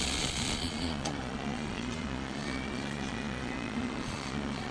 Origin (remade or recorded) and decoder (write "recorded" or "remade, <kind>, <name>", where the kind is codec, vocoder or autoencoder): remade, vocoder, Vocos